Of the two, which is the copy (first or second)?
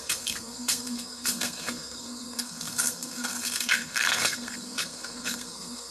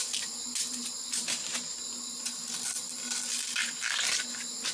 first